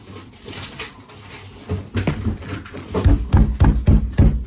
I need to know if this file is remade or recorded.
recorded